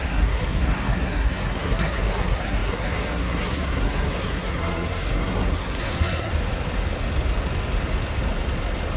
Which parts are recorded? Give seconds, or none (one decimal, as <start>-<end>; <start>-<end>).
6.3-9.0